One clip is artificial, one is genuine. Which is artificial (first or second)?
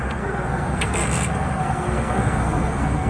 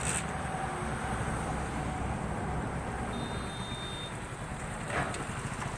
first